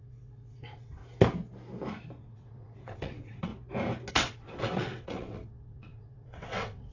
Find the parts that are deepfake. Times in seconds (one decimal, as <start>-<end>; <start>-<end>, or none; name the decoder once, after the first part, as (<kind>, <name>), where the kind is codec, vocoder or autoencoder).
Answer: 0.0-1.0 (vocoder, WaveNeXt); 2.2-3.5; 4.1-6.9